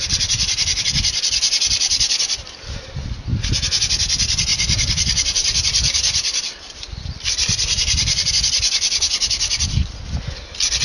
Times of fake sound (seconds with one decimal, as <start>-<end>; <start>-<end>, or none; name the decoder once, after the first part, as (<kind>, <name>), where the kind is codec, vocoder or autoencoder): 4.5-8.3 (vocoder, BigVGAN v2)